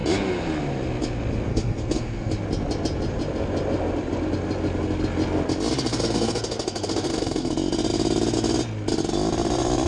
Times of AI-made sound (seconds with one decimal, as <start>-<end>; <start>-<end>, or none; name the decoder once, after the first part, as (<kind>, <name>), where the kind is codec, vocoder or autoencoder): 1.5-2.3 (codec, SNAC); 5.9-7.5